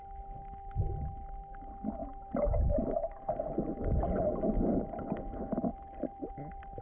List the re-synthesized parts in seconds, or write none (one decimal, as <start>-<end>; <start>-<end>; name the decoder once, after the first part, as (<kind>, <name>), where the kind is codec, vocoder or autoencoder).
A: 2.0-3.2 (vocoder, BigVGAN v2); 5.7-6.3